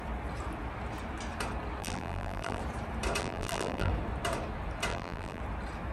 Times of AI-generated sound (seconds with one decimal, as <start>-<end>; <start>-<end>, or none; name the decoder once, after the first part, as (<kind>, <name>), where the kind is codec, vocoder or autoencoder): 1.8-2.6 (vocoder, BigVGAN v2); 3.2-3.9; 4.9-5.4